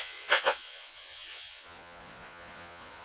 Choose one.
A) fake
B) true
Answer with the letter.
A